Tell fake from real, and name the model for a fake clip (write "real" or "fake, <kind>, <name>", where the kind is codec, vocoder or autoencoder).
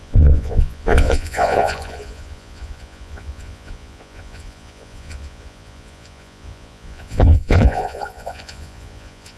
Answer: fake, vocoder, Vocos